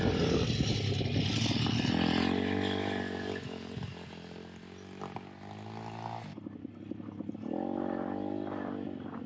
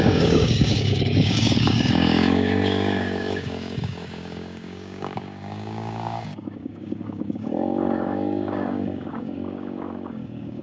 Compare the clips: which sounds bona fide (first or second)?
first